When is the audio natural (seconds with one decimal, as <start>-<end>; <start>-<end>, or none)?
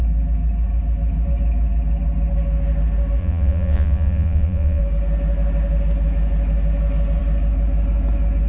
0.0-3.2; 4.8-8.5